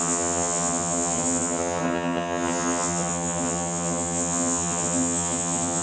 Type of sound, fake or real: fake